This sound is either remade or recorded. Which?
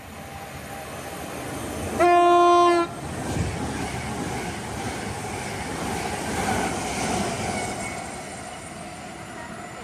recorded